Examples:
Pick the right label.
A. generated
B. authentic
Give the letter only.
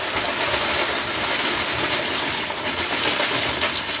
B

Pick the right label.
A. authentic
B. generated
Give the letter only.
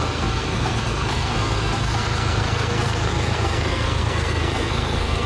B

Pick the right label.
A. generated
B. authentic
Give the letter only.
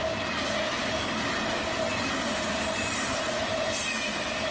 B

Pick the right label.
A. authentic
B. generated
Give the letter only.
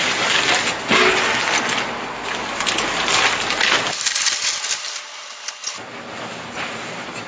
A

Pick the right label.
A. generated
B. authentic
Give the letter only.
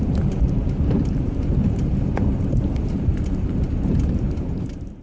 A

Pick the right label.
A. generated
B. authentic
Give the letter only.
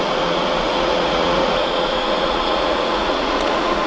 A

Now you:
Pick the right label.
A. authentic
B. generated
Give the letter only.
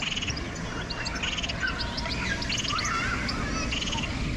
A